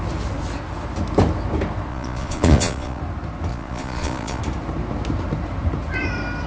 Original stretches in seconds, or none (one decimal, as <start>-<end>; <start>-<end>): 0.0-1.9; 3.0-3.5; 4.4-6.5